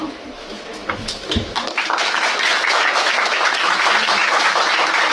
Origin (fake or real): fake